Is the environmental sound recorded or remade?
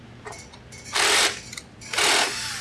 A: recorded